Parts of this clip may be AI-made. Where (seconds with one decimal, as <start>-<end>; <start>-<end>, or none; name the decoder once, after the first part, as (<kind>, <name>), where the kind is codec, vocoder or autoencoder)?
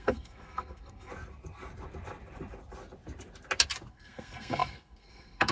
0.0-1.1 (codec, SNAC); 3.9-5.5